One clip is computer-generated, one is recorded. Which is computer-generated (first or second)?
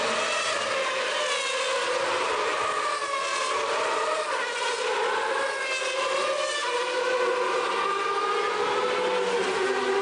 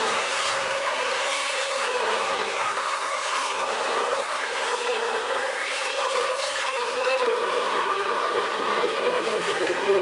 second